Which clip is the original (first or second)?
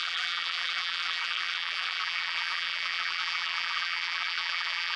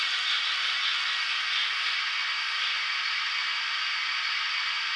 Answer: second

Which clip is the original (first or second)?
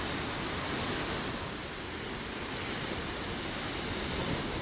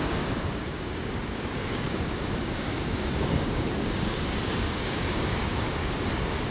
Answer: first